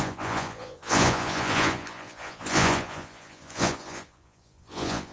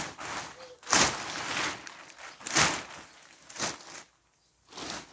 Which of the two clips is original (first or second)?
second